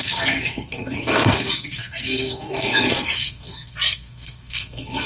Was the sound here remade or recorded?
remade